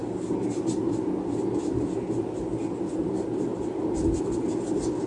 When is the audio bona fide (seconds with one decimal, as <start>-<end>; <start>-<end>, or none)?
0.0-5.1